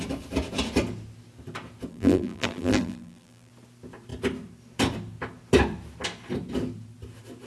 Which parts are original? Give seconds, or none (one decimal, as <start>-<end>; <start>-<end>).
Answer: 0.0-1.9; 3.5-7.5